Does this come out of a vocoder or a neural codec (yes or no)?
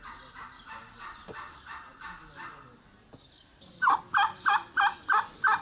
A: no